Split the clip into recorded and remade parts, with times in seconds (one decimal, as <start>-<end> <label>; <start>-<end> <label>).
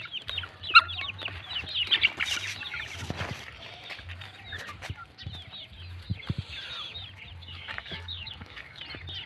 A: 0.0-7.4 recorded; 7.4-8.8 remade; 8.8-9.3 recorded